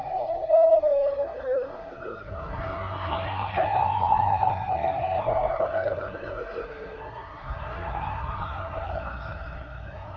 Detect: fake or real fake